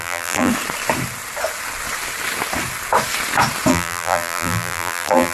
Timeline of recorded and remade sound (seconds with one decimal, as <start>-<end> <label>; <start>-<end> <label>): 0.0-0.5 remade; 0.5-3.7 recorded; 3.7-5.3 remade